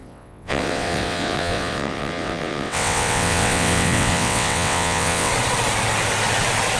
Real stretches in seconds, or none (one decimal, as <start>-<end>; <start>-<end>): 5.3-6.8